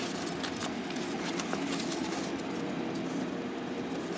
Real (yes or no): yes